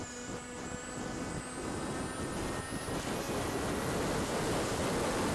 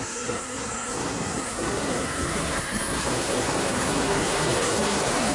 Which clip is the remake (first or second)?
second